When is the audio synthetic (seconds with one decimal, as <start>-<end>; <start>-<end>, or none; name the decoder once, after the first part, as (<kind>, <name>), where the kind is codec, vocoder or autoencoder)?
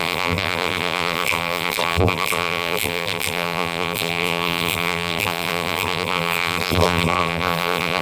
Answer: 0.0-8.0 (vocoder, BigVGAN v2)